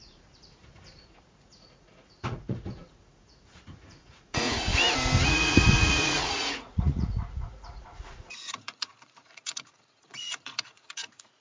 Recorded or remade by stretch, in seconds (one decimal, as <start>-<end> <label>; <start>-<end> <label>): 0.0-4.7 remade; 4.7-5.2 recorded; 5.2-11.4 remade